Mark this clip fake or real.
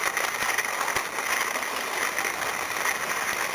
real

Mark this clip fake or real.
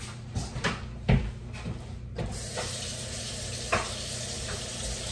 real